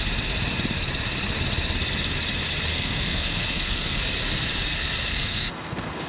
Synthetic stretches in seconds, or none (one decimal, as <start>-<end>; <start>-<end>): 2.7-4.0; 5.1-6.1